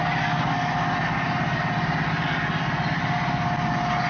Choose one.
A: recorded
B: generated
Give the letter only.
A